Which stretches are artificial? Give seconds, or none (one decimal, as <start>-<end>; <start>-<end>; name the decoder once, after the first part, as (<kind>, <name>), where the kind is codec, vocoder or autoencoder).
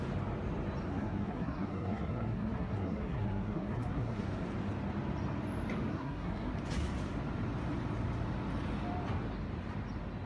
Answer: 0.9-4.2 (codec, SNAC); 5.9-6.5